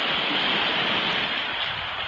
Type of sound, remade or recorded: recorded